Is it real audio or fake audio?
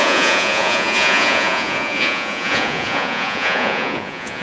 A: fake